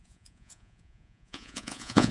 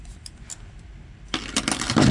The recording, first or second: second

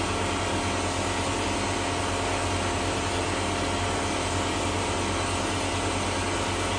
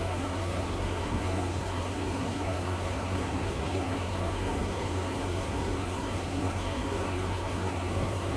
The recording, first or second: first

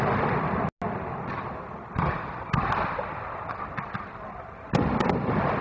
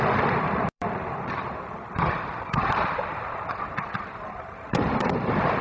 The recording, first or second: first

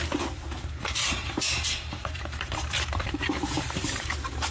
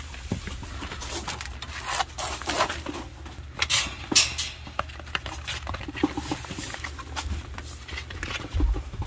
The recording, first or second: second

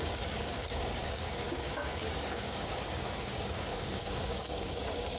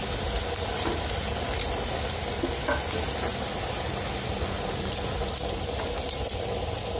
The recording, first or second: second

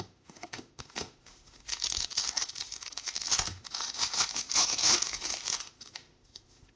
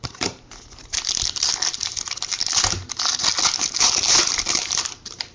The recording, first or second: second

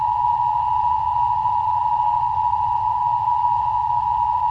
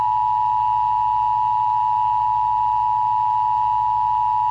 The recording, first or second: second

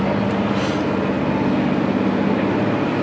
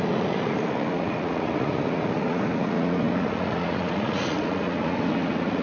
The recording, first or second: first